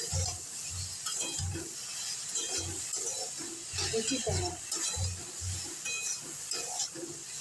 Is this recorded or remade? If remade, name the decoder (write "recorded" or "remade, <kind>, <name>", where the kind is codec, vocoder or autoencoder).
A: recorded